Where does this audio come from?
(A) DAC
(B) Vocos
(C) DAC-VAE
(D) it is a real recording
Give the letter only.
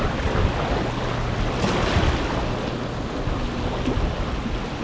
D